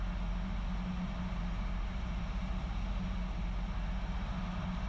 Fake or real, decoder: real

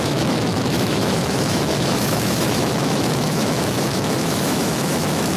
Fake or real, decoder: fake, autoencoder, DAC-VAE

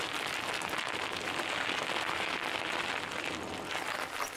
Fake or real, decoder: real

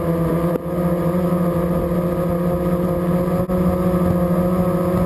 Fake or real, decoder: real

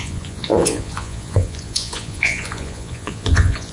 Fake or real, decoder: fake, vocoder, Vocos